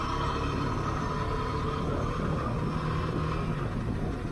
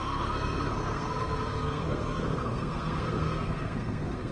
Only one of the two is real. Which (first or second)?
first